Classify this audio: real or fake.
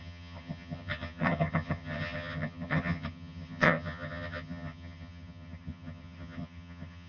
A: fake